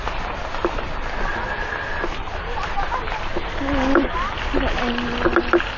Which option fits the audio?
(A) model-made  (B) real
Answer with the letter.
B